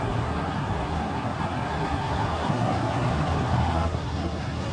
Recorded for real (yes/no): no